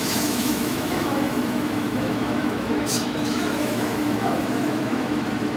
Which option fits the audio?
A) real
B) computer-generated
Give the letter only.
B